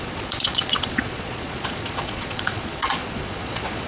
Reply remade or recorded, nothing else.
remade